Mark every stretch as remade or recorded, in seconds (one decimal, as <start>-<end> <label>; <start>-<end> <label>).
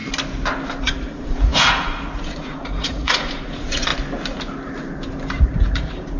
0.0-0.8 recorded; 0.8-3.9 remade; 3.9-5.4 recorded; 5.4-6.2 remade